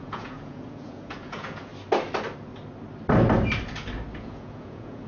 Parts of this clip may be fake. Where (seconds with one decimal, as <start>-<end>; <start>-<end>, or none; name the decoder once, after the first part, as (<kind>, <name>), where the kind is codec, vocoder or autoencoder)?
0.0-1.7 (vocoder, Vocos); 4.2-5.1